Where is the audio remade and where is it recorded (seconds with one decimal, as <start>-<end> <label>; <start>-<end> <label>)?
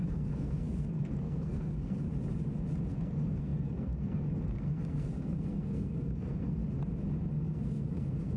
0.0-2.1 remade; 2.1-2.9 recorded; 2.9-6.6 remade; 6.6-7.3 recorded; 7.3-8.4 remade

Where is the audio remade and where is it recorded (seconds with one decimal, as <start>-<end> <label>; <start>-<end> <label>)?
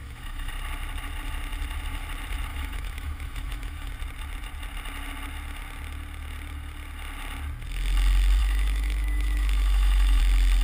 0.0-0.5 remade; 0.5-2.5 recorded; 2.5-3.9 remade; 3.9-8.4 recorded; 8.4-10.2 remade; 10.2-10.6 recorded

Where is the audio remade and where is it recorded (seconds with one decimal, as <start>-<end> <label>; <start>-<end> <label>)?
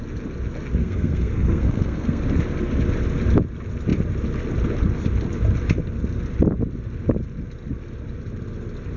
0.0-0.8 recorded; 0.8-2.2 remade; 2.2-9.0 recorded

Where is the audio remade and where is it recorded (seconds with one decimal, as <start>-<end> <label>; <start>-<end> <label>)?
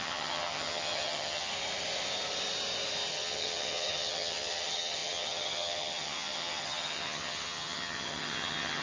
0.0-1.5 remade; 1.5-3.1 recorded; 3.1-8.8 remade